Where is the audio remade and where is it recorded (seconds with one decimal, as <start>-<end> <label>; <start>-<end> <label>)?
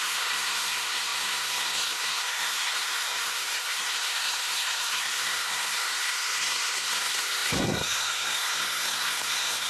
0.0-9.7 remade